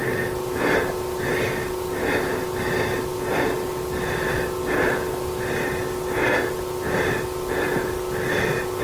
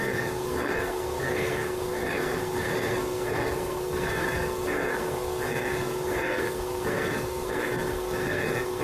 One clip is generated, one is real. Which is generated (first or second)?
second